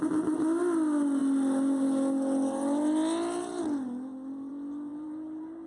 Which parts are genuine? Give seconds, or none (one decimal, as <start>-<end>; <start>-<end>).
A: 0.0-4.9